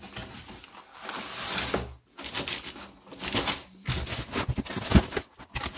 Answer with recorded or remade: recorded